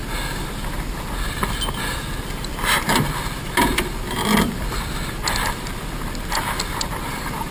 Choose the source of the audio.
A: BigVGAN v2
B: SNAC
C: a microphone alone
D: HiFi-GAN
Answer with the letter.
C